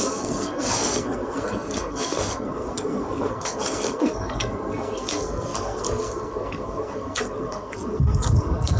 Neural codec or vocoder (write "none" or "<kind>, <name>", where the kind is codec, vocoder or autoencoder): codec, SNAC